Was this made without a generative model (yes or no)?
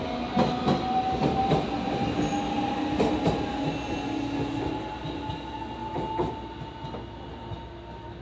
yes